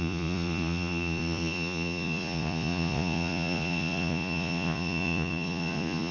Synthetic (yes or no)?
yes